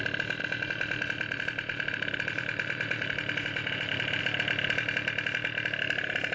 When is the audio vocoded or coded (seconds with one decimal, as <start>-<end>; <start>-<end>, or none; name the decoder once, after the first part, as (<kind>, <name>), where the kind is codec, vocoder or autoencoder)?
0.4-4.2 (vocoder, BigVGAN v2)